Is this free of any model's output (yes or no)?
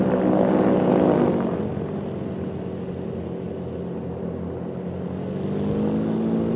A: yes